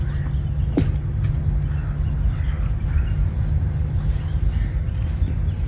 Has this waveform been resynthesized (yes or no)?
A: no